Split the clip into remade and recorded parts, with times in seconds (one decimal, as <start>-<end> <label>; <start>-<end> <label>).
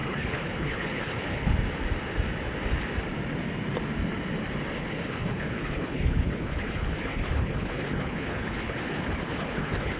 0.0-1.5 remade; 1.5-4.8 recorded; 4.8-10.0 remade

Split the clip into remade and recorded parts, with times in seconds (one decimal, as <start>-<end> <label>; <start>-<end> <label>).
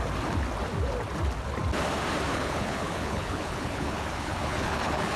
0.0-2.3 recorded; 2.3-5.2 remade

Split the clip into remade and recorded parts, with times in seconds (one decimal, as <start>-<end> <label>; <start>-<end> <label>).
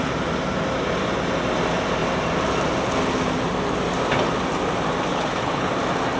0.0-5.1 recorded; 5.1-5.7 remade; 5.7-6.2 recorded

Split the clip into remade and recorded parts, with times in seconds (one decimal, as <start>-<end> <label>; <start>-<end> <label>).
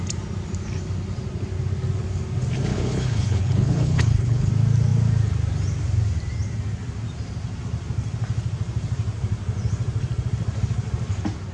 0.0-2.7 recorded; 2.7-4.5 remade; 4.5-11.5 recorded